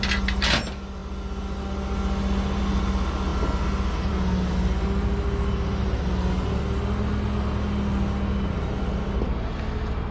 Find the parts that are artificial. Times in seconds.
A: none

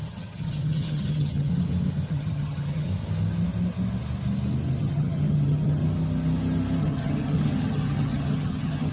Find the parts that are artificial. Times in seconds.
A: 0.0-1.5 (vocoder, HiFi-GAN); 2.1-2.9; 4.8-5.8; 6.8-8.9

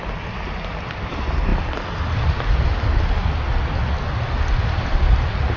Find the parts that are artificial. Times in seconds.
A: none

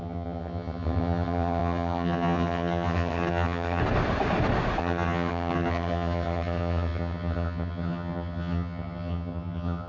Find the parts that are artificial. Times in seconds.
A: 0.0-3.8 (vocoder, HiFi-GAN); 4.8-9.9

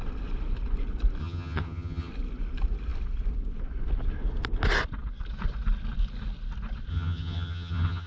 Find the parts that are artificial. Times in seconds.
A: 1.2-2.1 (vocoder, HiFi-GAN); 6.9-8.1